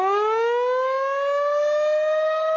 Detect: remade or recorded recorded